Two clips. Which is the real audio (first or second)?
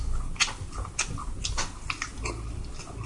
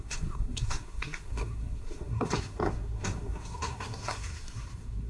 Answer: first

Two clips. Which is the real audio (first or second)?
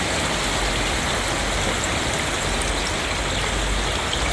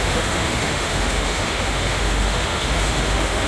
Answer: first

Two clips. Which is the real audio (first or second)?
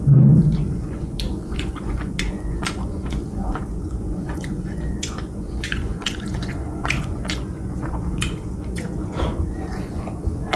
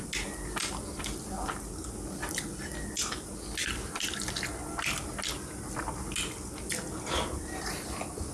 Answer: second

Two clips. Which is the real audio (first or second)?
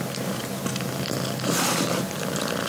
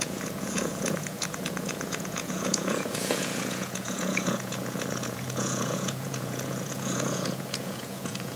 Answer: first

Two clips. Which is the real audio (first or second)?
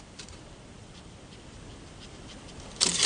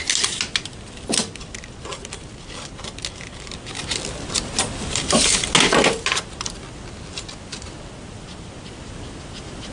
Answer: second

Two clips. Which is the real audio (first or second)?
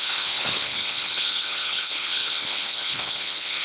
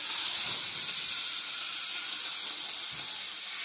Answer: second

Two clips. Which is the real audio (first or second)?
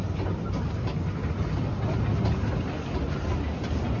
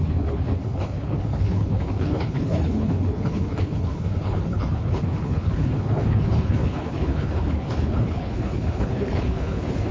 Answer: first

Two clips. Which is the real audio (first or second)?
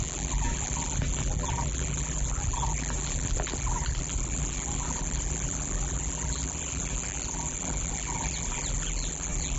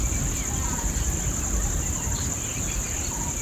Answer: second